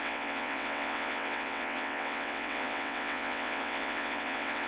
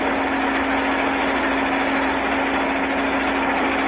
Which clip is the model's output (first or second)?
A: first